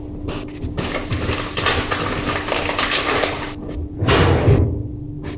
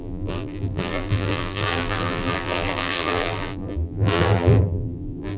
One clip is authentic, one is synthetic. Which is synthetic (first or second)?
second